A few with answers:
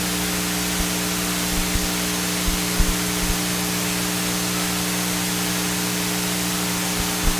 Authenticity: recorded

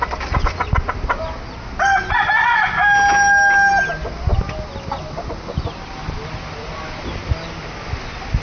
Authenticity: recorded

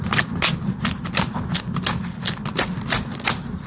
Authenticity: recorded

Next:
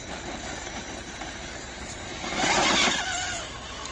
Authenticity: recorded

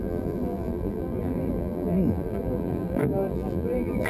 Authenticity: remade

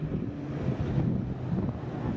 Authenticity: recorded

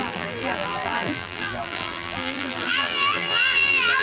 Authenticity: remade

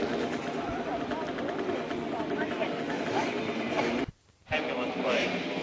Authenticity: recorded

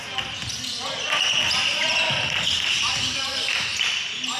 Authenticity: recorded